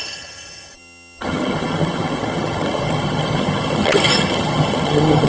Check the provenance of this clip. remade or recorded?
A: remade